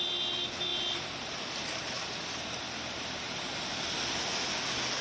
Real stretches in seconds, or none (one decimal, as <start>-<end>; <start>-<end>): 0.0-5.0